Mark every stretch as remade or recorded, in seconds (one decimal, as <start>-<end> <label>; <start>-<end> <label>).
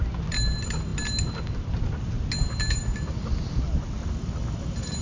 0.0-5.0 recorded